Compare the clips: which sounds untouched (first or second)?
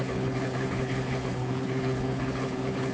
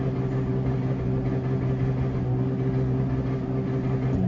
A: second